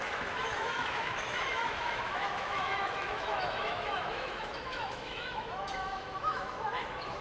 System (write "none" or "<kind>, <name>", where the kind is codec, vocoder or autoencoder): autoencoder, DAC-VAE